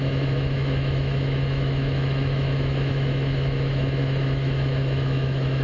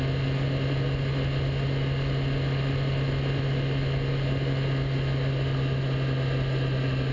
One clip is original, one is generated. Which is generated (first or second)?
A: first